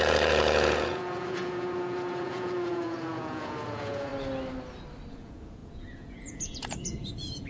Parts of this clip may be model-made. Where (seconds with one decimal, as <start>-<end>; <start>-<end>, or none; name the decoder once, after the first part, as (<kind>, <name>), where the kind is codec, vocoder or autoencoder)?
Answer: 0.0-4.1 (vocoder, Vocos); 5.1-7.5

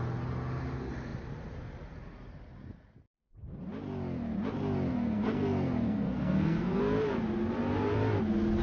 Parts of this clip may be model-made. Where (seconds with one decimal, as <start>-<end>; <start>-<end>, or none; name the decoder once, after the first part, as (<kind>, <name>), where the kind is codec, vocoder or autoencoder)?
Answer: 4.9-6.8 (codec, SNAC)

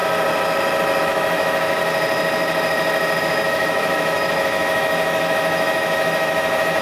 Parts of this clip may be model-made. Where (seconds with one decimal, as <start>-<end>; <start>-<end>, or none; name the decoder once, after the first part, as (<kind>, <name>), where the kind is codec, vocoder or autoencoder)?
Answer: 1.0-1.8 (autoencoder, DAC-VAE); 3.2-6.8

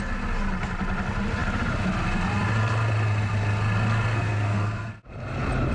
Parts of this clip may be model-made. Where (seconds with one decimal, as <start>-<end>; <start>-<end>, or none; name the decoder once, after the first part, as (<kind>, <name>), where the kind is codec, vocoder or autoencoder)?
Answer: 4.1-4.9 (codec, SNAC)

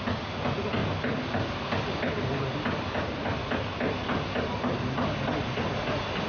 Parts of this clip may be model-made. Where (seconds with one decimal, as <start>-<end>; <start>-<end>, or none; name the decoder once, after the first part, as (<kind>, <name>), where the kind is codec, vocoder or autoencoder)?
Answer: none

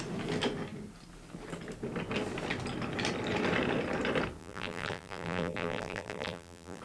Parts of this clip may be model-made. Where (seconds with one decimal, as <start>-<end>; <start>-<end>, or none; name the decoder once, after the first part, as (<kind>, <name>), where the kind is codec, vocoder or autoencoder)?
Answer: 4.4-6.8 (vocoder, BigVGAN v2)

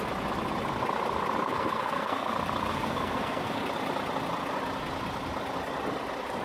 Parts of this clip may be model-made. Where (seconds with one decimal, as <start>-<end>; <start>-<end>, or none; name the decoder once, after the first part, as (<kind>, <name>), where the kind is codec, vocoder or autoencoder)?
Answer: 1.4-2.3 (codec, SNAC); 2.7-3.6

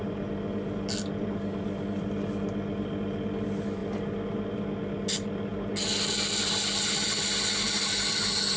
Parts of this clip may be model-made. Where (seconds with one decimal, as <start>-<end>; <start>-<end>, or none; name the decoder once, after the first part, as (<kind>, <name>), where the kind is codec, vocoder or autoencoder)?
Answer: none